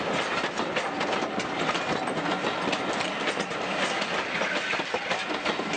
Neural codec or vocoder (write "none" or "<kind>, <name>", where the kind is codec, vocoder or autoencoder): none